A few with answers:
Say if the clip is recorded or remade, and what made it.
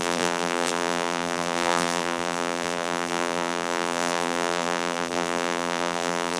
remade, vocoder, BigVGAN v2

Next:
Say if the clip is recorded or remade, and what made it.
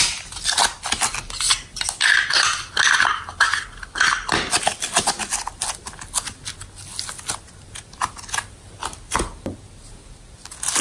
recorded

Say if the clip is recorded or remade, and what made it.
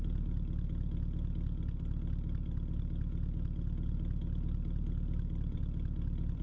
remade, vocoder, BigVGAN v2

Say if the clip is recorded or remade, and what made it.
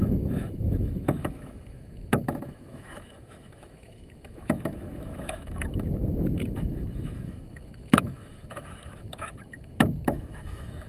remade, autoencoder, DAC-VAE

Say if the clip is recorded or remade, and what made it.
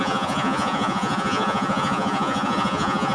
remade, vocoder, Vocos